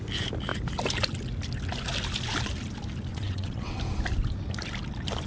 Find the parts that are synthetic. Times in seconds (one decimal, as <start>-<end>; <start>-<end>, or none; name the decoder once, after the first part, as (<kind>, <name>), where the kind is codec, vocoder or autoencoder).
3.1-3.8 (vocoder, WaveNeXt)